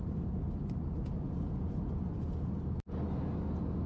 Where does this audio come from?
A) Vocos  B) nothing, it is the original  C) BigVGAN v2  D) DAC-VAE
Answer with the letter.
B